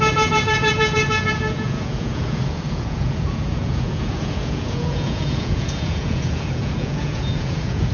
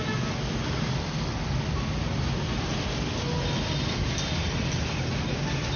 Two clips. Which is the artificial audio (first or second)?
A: first